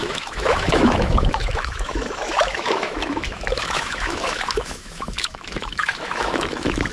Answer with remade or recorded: remade